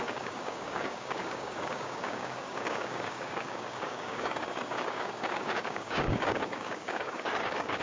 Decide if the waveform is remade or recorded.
remade